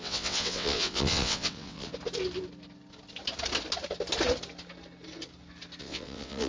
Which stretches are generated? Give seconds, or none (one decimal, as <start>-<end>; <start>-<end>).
0.0-1.9; 5.8-6.5